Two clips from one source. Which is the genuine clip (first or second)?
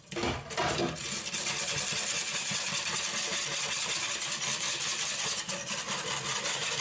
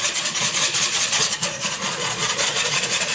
first